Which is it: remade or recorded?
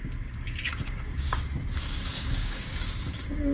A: remade